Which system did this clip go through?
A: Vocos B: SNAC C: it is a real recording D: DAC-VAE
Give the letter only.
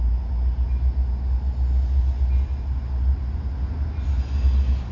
C